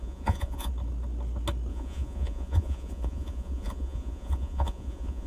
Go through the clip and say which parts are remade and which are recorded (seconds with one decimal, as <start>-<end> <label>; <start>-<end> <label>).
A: 0.0-0.7 remade; 0.7-1.7 recorded; 1.7-5.3 remade